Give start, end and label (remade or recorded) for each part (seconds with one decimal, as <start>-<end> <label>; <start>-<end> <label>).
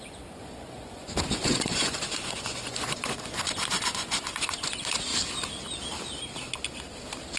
0.0-5.1 remade; 5.1-7.4 recorded